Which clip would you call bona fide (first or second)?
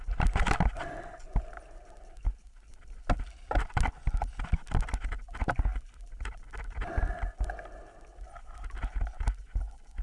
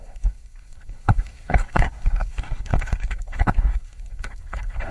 first